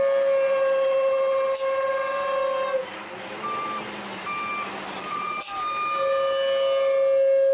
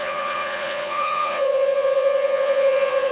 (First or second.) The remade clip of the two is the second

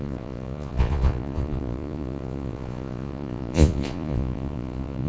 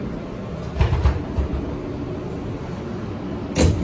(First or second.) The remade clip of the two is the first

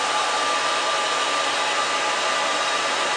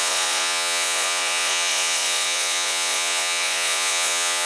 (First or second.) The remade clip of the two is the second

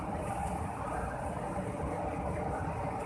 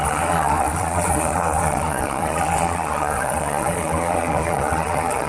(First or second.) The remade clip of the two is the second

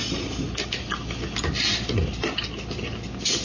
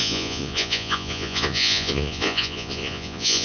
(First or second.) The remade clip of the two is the second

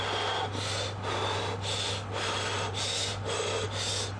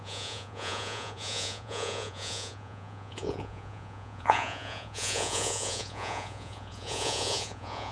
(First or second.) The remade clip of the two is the second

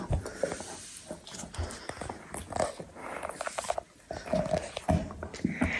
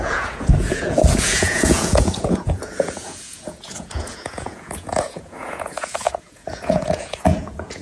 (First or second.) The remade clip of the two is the second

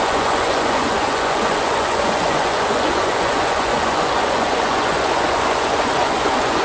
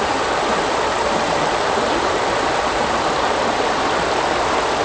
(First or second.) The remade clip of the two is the first